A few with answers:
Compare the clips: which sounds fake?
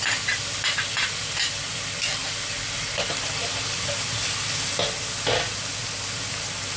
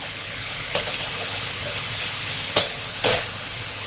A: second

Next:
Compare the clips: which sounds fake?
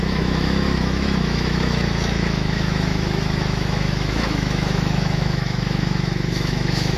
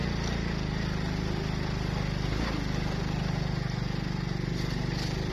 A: first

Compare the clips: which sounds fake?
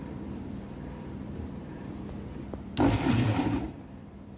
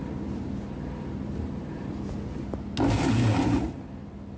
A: first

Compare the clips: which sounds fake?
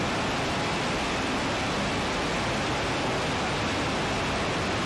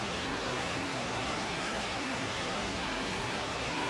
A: second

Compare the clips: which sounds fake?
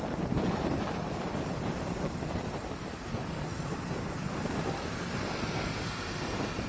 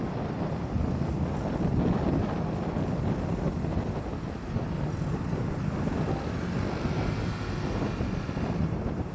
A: first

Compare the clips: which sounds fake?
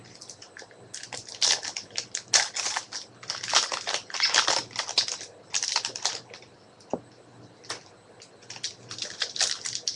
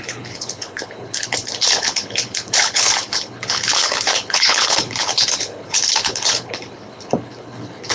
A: second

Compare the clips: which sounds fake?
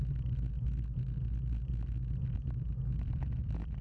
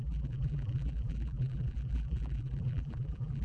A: second